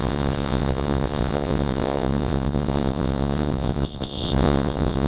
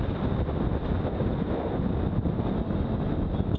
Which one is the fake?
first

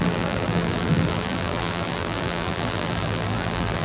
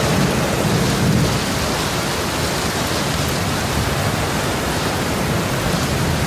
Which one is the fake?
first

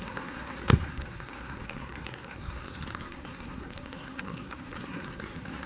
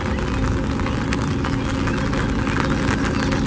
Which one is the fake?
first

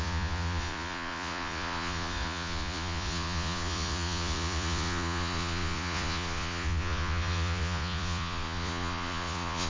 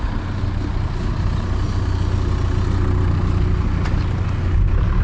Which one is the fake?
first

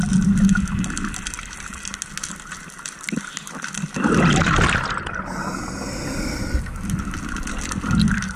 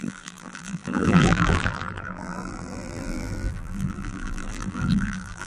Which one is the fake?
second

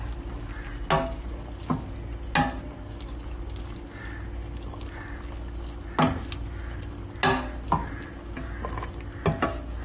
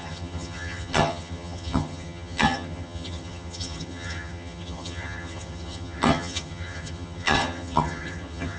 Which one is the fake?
second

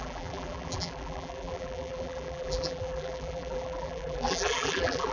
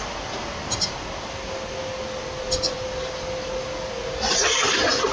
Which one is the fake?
first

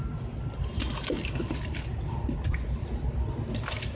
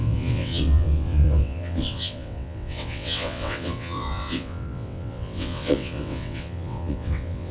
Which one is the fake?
second